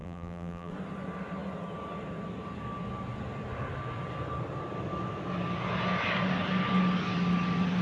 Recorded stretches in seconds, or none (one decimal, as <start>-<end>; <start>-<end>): 0.7-7.8

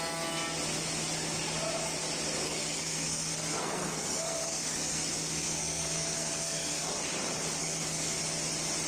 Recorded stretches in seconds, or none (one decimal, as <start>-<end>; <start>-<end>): 0.0-2.4; 7.0-7.6; 8.2-8.9

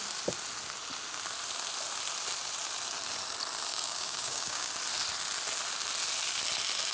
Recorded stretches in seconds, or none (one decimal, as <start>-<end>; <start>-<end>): 0.0-3.7; 4.7-6.9

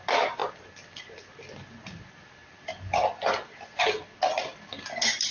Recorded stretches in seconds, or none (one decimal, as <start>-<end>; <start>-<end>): 0.0-5.3

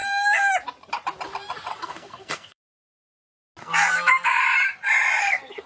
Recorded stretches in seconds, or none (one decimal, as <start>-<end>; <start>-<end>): 0.5-1.7; 2.6-3.6; 4.4-5.2

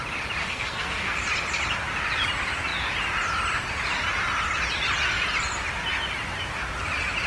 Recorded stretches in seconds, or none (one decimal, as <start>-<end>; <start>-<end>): 0.0-0.4; 1.2-7.3